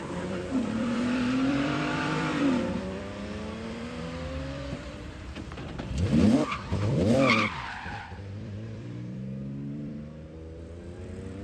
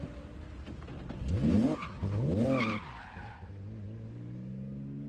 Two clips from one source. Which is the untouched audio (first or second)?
second